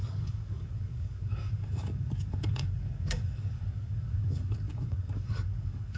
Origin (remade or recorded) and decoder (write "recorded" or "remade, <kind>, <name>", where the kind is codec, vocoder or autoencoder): remade, codec, DAC